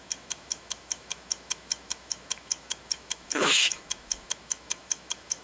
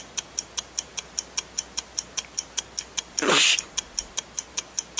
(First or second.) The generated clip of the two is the first